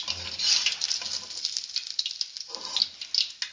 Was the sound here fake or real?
real